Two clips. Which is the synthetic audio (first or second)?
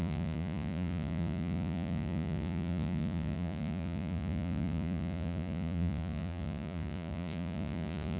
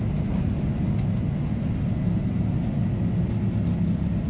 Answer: first